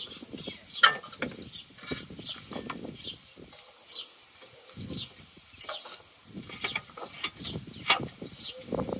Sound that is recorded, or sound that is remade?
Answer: recorded